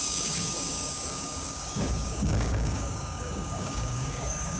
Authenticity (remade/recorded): remade